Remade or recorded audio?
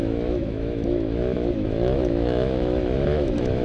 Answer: remade